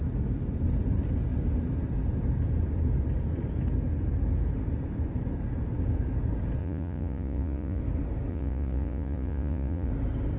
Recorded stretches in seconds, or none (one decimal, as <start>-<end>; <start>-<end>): 0.0-6.6; 7.8-8.3; 9.9-10.4